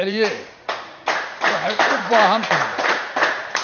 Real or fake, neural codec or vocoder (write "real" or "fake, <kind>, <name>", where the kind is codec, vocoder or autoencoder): fake, vocoder, Vocos